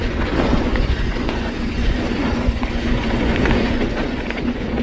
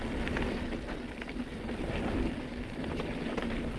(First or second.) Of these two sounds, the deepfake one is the first